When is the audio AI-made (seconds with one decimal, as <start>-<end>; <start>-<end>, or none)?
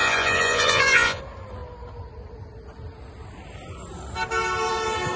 0.0-1.2